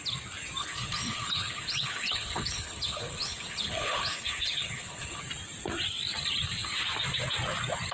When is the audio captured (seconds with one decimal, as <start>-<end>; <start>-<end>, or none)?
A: 0.0-0.6; 5.2-7.9